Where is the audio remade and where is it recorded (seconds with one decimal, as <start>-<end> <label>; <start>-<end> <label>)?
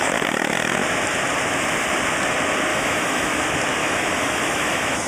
0.0-2.7 recorded; 2.7-3.4 remade; 3.4-3.8 recorded; 3.8-5.1 remade